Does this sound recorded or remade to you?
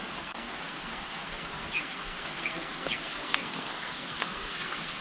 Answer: remade